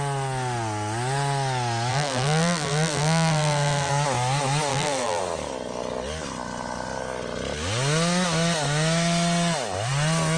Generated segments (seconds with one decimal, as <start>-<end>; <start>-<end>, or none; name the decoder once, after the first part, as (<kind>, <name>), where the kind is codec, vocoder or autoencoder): 1.9-3.9 (vocoder, BigVGAN v2); 4.7-5.2